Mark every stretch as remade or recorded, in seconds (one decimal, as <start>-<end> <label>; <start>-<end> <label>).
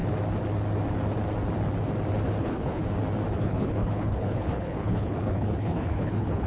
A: 0.0-2.4 recorded; 2.4-2.8 remade; 2.8-3.4 recorded; 3.4-6.5 remade